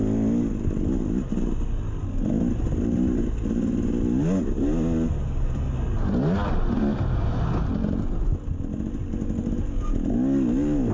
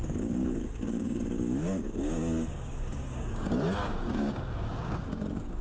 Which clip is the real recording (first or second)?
first